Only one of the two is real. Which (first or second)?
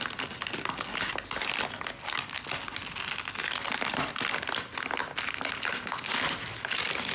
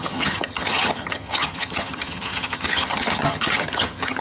first